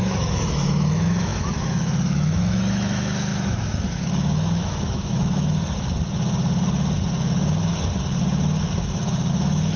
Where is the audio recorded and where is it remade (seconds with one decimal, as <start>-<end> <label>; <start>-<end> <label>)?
0.0-5.6 remade; 5.6-9.3 recorded; 9.3-9.8 remade